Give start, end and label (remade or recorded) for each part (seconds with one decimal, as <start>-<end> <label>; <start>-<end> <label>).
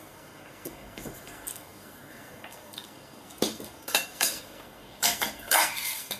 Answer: 0.0-6.2 remade